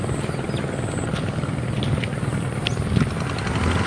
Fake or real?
real